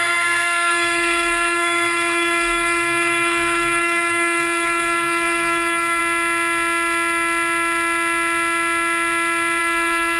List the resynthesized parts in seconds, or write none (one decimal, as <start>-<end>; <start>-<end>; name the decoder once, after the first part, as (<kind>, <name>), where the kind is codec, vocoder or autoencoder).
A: 0.0-6.0 (codec, SNAC); 9.6-10.2